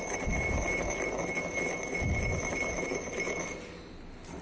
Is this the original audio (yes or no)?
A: yes